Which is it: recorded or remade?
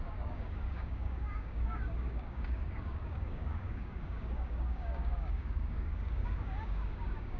remade